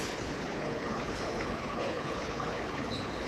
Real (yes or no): no